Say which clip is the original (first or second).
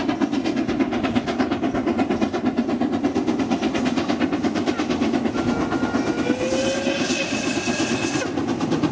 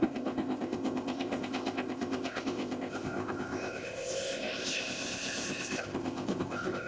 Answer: first